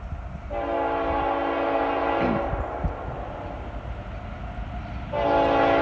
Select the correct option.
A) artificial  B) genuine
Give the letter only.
B